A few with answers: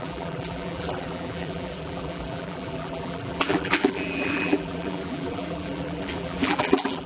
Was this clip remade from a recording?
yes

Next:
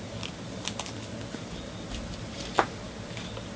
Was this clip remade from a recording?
no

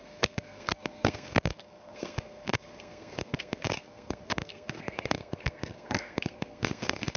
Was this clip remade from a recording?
yes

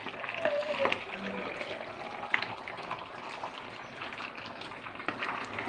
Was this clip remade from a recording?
no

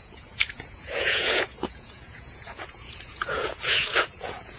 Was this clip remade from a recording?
yes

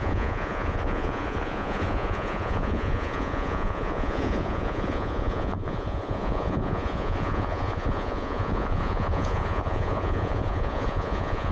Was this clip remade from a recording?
yes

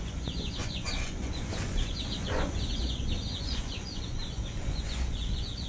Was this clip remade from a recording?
yes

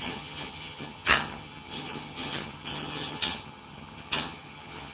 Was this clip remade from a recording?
yes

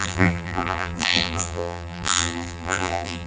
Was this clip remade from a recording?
yes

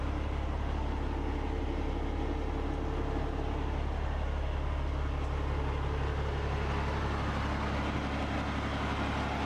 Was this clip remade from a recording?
no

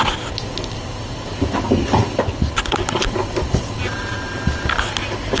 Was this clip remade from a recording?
no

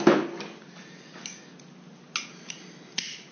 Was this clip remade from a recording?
no